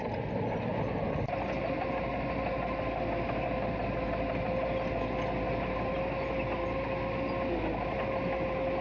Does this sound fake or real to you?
real